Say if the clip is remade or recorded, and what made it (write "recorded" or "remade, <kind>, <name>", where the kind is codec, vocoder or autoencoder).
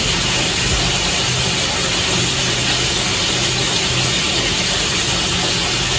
recorded